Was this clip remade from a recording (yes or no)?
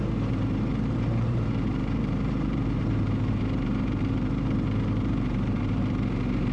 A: yes